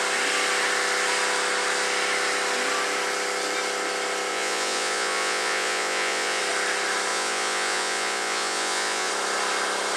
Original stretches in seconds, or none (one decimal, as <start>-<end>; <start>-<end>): 0.0-4.3; 6.4-7.1; 9.1-10.0